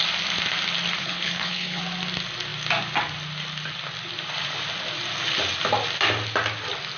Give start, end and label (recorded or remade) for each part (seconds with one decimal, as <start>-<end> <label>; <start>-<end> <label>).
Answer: 0.0-1.0 recorded; 1.0-1.8 remade; 1.8-7.0 recorded